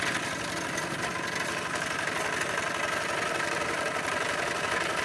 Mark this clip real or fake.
real